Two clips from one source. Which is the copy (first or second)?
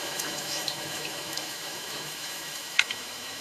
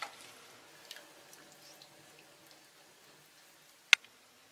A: first